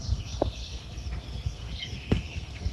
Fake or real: fake